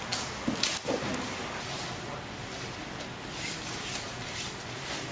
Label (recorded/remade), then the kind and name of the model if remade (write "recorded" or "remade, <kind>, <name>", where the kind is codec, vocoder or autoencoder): recorded